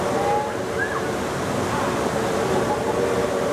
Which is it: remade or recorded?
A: recorded